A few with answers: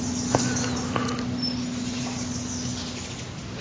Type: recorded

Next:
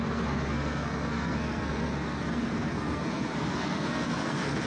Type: remade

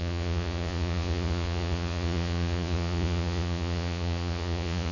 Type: remade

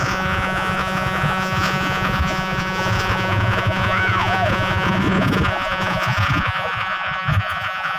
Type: remade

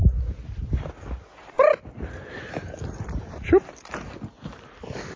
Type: recorded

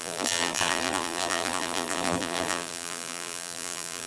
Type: remade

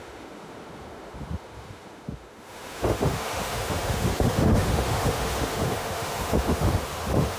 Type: remade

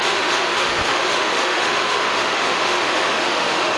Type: remade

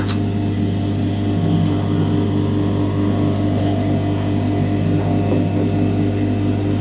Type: recorded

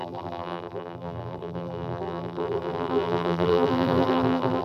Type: remade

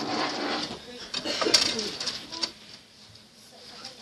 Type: recorded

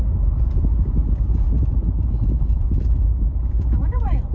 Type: remade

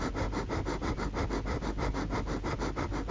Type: recorded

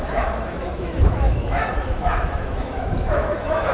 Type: remade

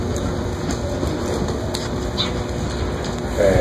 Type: recorded